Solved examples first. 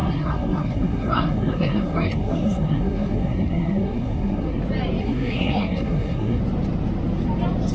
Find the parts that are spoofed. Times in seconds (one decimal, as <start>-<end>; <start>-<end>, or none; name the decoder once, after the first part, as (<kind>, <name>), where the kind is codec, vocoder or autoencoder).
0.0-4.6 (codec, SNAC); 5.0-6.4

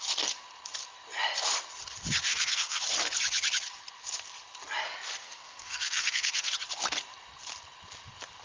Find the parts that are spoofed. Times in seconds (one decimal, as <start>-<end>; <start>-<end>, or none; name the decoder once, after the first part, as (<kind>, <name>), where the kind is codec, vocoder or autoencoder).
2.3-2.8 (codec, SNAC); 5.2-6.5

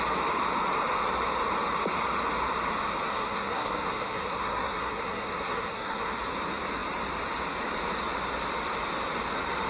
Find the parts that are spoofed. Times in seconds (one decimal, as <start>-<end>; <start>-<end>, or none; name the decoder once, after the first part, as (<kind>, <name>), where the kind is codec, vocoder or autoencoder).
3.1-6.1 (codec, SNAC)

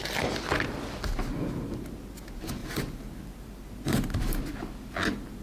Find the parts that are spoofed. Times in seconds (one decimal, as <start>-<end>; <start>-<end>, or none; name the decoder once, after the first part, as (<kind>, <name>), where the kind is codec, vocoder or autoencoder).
2.6-4.4 (vocoder, BigVGAN v2)

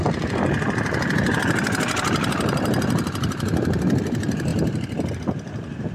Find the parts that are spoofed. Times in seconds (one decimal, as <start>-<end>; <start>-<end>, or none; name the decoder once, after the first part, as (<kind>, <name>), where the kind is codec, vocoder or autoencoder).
none